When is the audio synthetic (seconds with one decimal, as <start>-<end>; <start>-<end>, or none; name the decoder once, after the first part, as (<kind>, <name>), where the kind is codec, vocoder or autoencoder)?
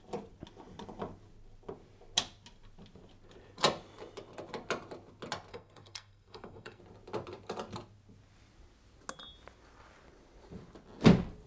5.5-6.8 (codec, SNAC)